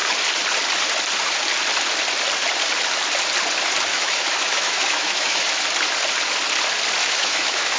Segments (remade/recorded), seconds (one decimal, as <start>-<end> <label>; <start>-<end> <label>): 0.0-3.9 recorded; 3.9-5.6 remade; 5.6-7.0 recorded; 7.0-7.8 remade